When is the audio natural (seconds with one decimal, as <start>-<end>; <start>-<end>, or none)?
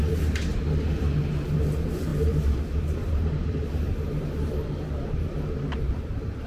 0.5-1.0